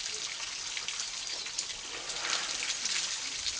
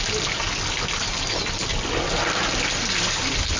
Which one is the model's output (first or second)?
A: first